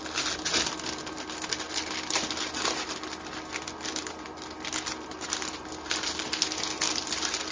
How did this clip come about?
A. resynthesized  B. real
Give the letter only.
B